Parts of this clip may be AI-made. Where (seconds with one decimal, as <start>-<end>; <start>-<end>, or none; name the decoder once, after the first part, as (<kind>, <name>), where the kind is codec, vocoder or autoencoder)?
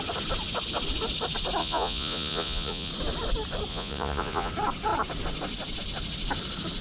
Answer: 1.6-2.9 (vocoder, Vocos); 3.7-4.5